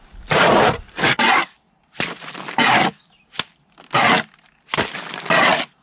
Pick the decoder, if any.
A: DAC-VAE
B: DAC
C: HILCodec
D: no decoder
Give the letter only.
D